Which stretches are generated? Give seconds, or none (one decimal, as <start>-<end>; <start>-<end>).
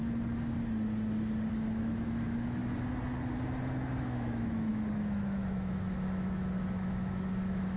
1.5-2.6; 4.0-7.8